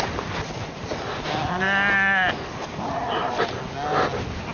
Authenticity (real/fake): real